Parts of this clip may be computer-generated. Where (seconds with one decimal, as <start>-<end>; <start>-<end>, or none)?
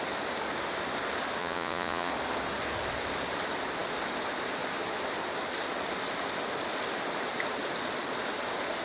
1.4-2.1